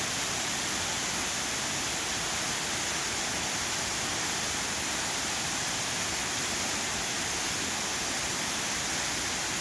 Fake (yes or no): no